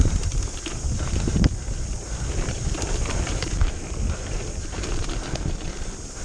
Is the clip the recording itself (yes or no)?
yes